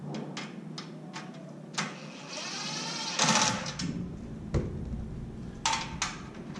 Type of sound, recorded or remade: recorded